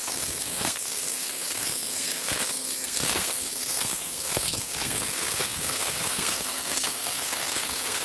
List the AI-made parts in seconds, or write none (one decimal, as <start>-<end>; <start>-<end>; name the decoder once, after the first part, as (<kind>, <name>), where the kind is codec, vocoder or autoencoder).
0.0-8.0 (codec, SNAC)